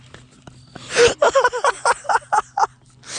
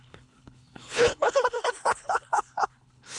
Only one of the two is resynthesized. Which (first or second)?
second